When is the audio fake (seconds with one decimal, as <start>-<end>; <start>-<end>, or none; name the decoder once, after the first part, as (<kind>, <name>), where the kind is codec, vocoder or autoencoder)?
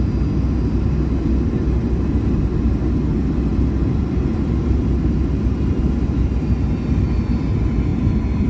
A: 3.5-5.8 (vocoder, BigVGAN v2); 7.9-8.5